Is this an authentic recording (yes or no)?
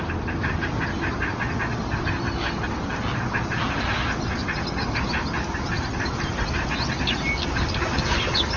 yes